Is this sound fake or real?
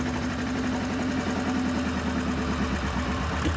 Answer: real